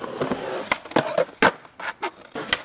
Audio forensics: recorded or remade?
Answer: recorded